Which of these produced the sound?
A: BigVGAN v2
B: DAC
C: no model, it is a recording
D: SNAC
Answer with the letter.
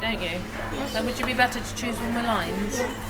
C